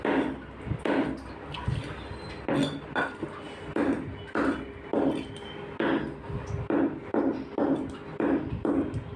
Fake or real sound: real